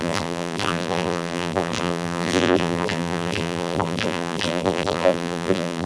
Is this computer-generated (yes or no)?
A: yes